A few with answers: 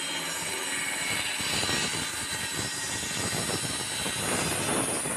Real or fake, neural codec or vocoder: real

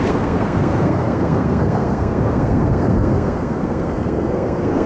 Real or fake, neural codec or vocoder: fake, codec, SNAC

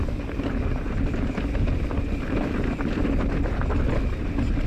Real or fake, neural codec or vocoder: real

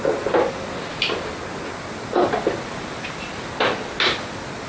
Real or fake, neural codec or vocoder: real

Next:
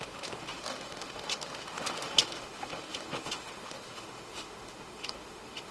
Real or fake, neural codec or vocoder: fake, autoencoder, DAC-VAE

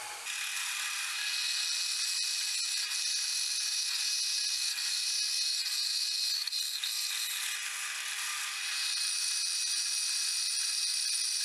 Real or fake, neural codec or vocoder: real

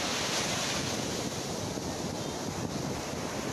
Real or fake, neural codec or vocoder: real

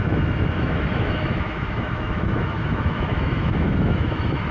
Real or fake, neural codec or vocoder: fake, autoencoder, DAC-VAE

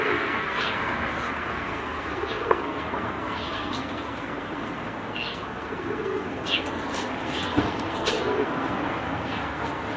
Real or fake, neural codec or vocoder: fake, codec, SNAC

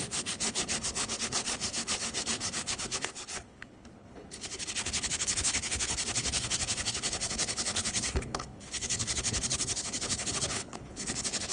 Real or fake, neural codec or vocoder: fake, codec, HILCodec